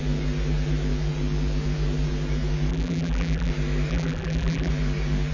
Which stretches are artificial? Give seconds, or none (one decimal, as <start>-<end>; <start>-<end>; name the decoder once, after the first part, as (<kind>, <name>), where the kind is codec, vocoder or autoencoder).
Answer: 2.7-3.5 (vocoder, BigVGAN v2); 3.9-4.7